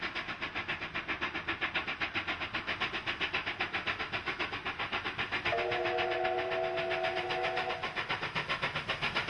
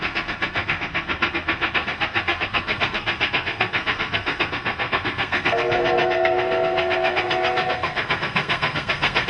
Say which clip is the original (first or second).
first